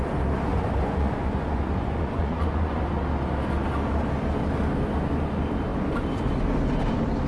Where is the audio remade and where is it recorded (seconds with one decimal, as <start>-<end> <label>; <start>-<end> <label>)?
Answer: 0.0-0.5 recorded; 0.5-2.8 remade; 2.8-7.3 recorded